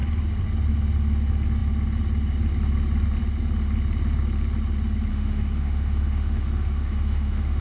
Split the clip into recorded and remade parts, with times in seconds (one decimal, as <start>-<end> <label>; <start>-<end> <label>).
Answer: 0.0-5.1 recorded; 5.1-7.6 remade